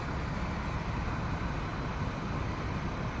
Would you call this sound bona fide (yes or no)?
yes